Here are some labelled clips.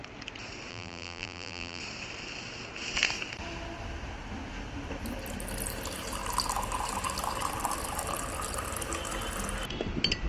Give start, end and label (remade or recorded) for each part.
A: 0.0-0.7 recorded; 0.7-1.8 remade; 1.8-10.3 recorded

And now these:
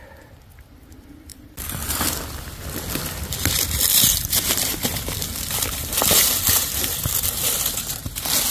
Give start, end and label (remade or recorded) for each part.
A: 0.0-1.3 recorded; 1.3-2.6 remade; 2.6-3.9 recorded; 3.9-6.8 remade; 6.8-8.5 recorded

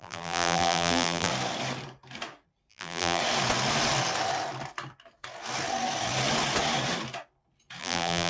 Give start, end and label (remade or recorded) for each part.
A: 0.0-1.3 remade; 1.3-2.7 recorded; 2.7-3.2 remade; 3.2-7.8 recorded; 7.8-8.3 remade

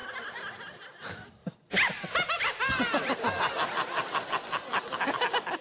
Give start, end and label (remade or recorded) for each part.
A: 0.0-1.0 remade; 1.0-5.6 recorded

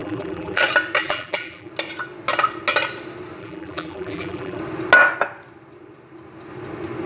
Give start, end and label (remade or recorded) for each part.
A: 0.0-0.6 remade; 0.6-1.0 recorded; 1.0-1.7 remade; 1.7-3.4 recorded; 3.4-4.6 remade; 4.6-7.1 recorded